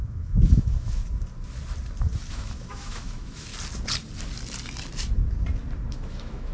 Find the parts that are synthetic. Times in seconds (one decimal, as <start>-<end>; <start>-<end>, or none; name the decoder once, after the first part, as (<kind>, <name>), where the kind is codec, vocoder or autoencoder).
0.0-1.0 (autoencoder, DAC-VAE); 2.3-3.5; 5.9-6.5